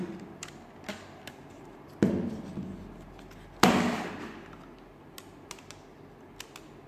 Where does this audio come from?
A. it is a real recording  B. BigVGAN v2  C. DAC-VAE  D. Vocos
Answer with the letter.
A